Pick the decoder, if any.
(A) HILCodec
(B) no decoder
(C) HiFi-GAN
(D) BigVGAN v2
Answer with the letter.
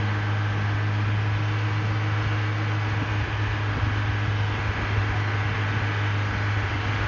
B